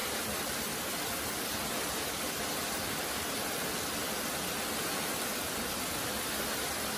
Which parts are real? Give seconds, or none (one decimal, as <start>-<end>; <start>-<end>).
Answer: 3.1-5.3; 6.6-7.0